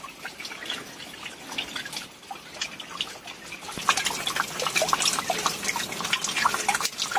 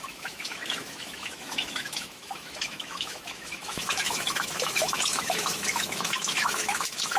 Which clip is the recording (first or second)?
first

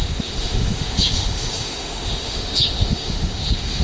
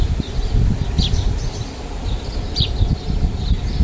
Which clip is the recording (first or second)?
second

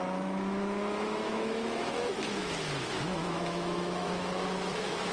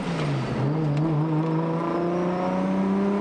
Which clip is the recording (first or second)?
second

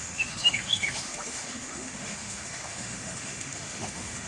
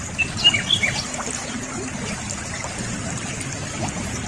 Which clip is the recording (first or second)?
second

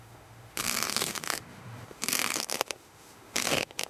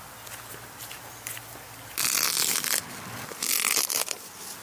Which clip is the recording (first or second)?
second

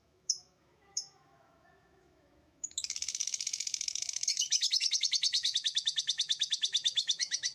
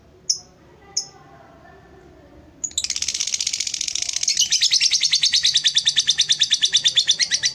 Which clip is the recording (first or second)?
second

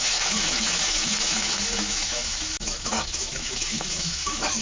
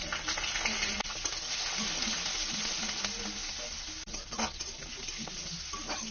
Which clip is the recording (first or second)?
second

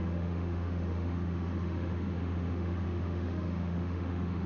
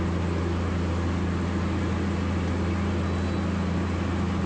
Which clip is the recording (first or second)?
second